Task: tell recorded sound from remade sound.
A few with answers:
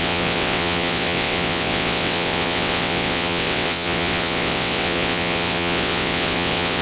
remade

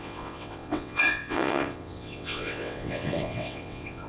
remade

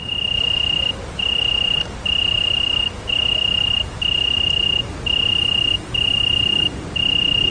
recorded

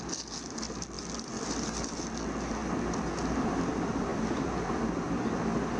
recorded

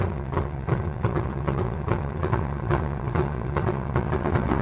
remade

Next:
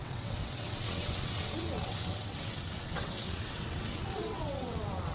remade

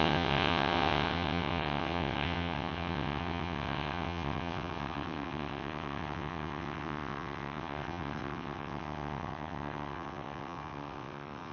remade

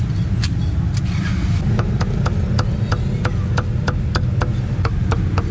recorded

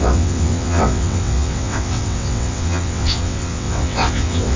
remade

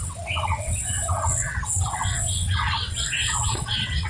remade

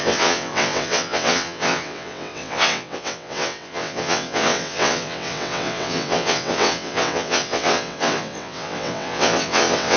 remade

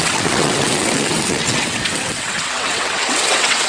remade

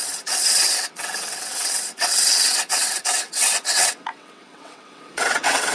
remade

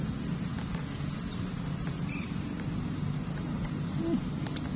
recorded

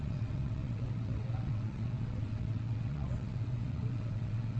remade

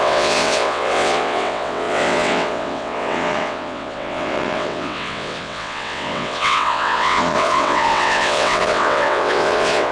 remade